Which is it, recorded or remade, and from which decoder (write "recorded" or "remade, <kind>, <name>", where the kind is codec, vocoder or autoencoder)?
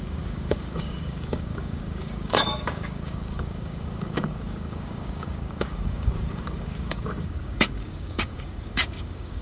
remade, codec, DAC